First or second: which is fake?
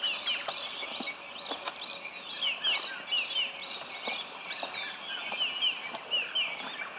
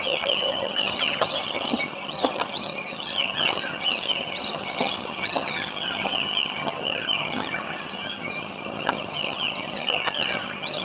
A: second